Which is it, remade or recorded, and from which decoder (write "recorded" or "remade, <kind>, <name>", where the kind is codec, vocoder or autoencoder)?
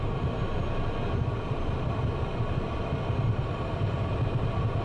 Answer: recorded